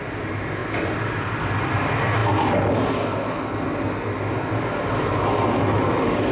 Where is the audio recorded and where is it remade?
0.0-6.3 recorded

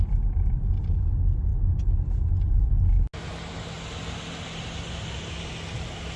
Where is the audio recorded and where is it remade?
0.0-6.2 recorded

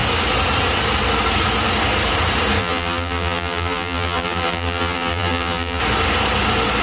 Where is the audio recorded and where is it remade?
0.0-2.6 recorded; 2.6-5.8 remade; 5.8-6.8 recorded

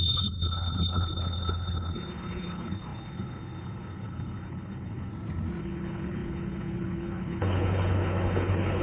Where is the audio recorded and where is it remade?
0.0-5.1 remade; 5.1-5.6 recorded; 5.6-8.8 remade

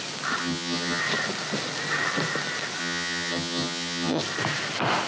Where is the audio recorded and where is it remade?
0.0-0.4 recorded; 0.4-1.0 remade; 1.0-2.8 recorded; 2.8-4.2 remade; 4.2-5.1 recorded

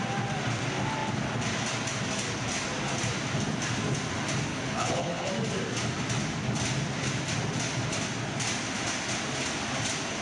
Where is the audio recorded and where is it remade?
0.0-4.5 recorded; 4.5-5.3 remade; 5.3-10.2 recorded

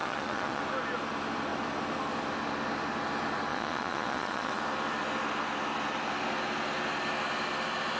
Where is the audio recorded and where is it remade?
0.0-0.6 remade; 0.6-3.5 recorded; 3.5-4.6 remade; 4.6-8.0 recorded